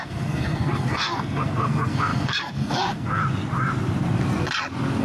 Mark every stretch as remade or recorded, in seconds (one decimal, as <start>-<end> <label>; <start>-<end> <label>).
0.0-3.2 remade; 3.2-5.0 recorded